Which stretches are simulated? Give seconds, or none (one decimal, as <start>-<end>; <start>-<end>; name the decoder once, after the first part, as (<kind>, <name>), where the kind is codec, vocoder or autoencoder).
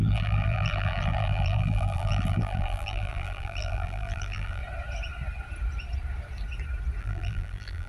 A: 0.0-4.6 (vocoder, BigVGAN v2); 7.0-7.9